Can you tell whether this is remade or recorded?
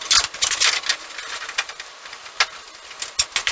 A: recorded